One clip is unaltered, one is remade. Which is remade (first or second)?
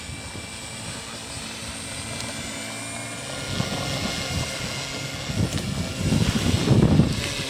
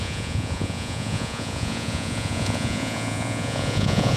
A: second